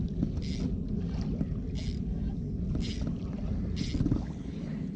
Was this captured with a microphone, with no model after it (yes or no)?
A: yes